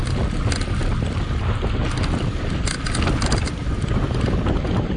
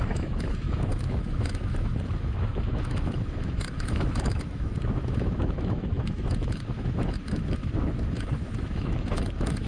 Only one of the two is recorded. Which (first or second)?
first